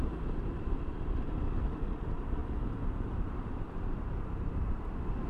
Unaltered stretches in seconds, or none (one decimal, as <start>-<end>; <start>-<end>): 2.4-3.1